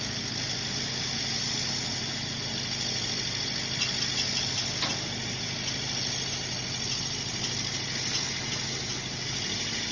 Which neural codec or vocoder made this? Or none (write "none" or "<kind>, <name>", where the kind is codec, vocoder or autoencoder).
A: none